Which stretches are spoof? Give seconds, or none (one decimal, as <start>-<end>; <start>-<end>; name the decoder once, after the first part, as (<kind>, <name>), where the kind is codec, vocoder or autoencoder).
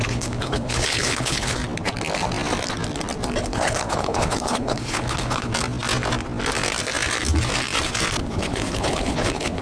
0.0-1.6 (codec, HILCodec); 3.4-5.5; 8.2-9.6